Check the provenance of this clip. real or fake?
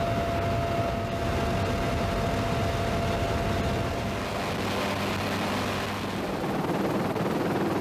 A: real